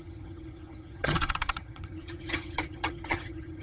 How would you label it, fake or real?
fake